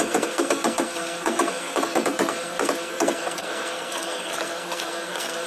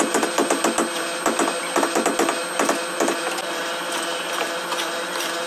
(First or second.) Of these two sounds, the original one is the second